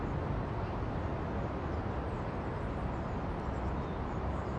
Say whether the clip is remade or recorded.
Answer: recorded